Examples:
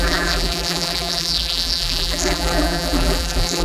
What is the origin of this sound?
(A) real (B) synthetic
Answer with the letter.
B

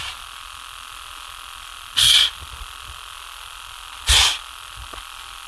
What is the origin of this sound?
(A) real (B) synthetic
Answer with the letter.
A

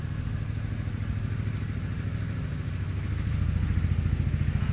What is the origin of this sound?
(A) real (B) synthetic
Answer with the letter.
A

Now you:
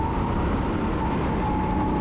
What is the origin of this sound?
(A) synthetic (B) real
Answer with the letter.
B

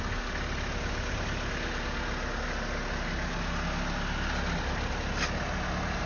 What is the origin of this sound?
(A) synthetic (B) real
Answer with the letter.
B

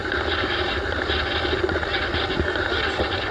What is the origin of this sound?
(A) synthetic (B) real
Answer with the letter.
B